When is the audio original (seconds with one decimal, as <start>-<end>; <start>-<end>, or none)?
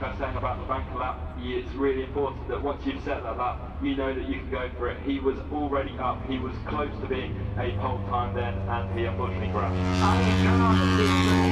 8.0-11.5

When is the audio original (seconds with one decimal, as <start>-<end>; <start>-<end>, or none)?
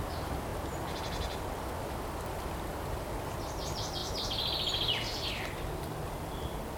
4.0-6.8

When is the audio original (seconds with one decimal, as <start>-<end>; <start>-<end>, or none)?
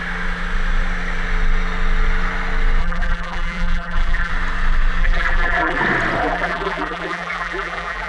0.0-2.8; 4.3-5.0; 5.8-6.2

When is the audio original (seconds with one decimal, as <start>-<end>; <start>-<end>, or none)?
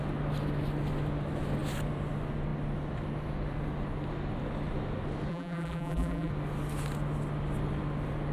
0.0-5.3; 6.3-8.3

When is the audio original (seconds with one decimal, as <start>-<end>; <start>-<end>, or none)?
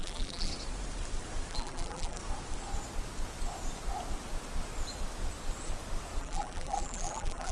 0.5-1.5; 2.2-6.2